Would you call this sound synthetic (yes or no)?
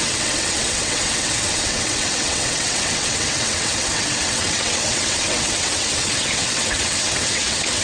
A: yes